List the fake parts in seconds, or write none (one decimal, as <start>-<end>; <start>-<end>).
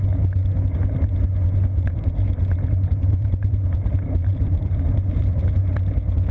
1.7-5.4